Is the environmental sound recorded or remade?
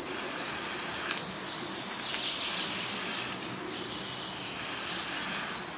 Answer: recorded